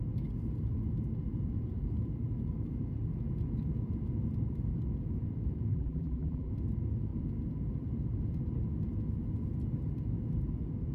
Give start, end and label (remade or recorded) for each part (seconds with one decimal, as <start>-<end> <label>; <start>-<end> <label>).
0.0-5.7 recorded; 5.7-6.5 remade; 6.5-10.9 recorded